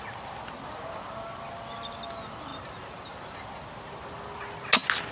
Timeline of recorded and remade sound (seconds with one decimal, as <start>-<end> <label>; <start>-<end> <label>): 0.0-5.1 recorded